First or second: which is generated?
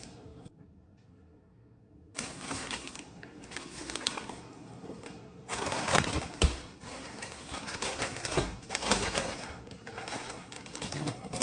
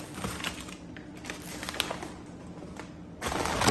first